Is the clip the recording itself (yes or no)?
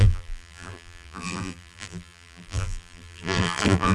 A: no